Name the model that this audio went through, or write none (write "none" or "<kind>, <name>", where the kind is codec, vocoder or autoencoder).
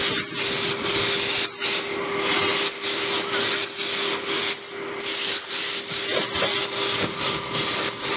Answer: none